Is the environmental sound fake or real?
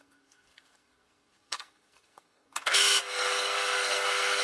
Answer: fake